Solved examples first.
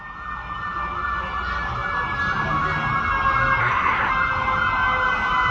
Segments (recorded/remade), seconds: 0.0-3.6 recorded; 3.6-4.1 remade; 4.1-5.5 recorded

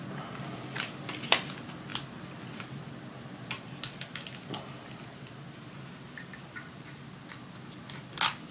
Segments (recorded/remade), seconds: 0.0-8.5 recorded

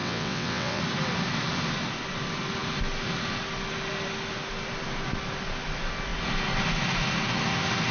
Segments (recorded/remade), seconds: 0.0-0.8 remade; 0.8-7.9 recorded

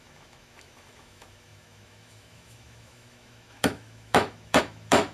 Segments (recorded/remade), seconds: 0.0-5.1 remade

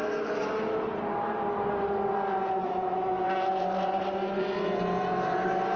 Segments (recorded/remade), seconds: 0.0-2.6 recorded; 2.6-3.5 remade; 3.5-5.8 recorded

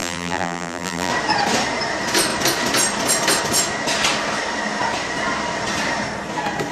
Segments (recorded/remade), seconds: 0.0-1.1 remade; 1.1-6.7 recorded

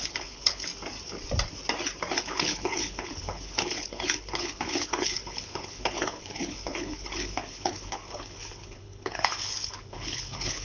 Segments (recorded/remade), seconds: 0.0-0.7 remade; 0.7-2.2 recorded; 2.2-10.6 remade